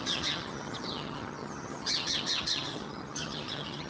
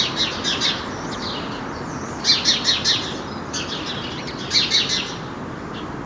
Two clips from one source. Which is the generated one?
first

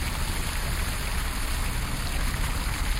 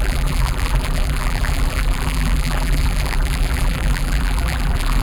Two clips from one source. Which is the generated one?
second